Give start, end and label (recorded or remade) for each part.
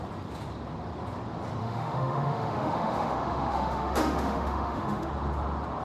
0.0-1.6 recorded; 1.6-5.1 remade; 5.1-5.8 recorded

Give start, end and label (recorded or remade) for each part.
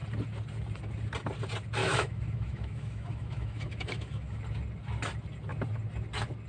0.0-1.8 recorded; 1.8-4.4 remade; 4.4-6.5 recorded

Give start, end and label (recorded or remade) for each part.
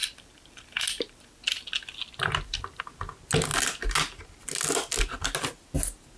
0.0-2.8 remade; 2.8-6.2 recorded